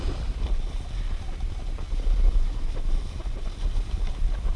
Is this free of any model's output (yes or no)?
yes